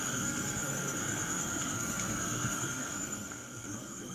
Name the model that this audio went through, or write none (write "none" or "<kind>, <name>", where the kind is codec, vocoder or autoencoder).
codec, SNAC